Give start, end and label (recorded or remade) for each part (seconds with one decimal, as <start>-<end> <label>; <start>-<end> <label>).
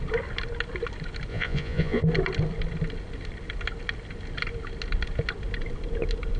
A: 0.0-1.3 recorded; 1.3-2.0 remade; 2.0-6.4 recorded